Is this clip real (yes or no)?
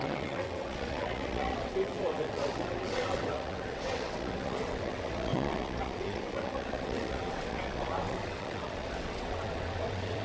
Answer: no